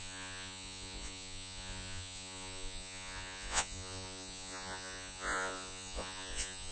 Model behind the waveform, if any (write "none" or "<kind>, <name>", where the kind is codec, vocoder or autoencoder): vocoder, Vocos